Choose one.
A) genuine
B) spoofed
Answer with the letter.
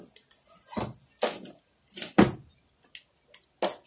A